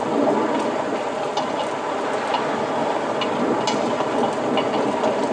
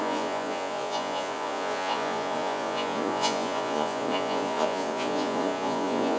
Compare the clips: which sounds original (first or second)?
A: first